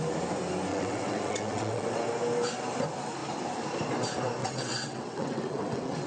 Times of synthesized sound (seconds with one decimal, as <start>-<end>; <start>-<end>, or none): 0.7-1.9; 4.4-6.1